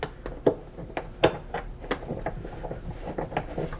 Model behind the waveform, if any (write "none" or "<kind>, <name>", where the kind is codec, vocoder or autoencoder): none